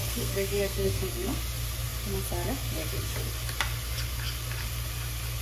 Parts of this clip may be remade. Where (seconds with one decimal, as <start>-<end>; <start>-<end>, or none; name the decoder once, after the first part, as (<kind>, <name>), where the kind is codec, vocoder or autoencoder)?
0.0-1.4 (codec, SNAC)